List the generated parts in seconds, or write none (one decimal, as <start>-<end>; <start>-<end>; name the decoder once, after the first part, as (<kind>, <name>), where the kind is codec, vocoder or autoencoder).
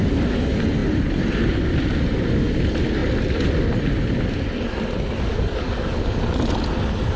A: 5.3-6.2 (codec, DAC)